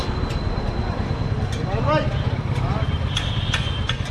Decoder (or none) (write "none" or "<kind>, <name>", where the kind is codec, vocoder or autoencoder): none